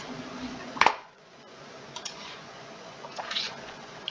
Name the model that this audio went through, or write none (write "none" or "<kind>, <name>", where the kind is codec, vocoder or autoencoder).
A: vocoder, Vocos